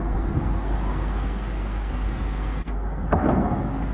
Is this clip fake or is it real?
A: fake